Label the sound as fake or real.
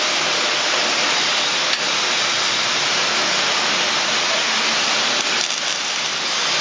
real